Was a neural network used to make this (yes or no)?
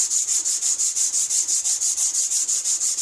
no